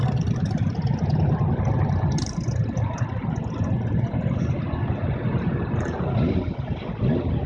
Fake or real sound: real